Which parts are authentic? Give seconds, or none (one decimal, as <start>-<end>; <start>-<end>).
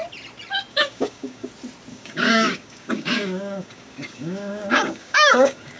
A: 0.0-0.7; 1.5-1.9